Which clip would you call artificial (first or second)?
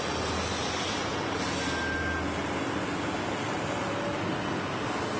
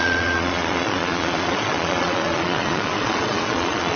second